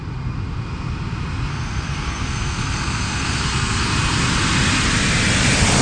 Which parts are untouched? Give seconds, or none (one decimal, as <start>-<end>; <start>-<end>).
0.0-1.5; 3.9-5.8